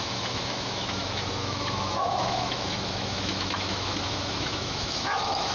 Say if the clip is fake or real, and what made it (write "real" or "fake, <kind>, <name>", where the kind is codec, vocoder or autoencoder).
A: fake, autoencoder, DAC-VAE